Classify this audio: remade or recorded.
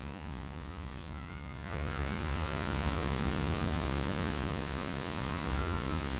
remade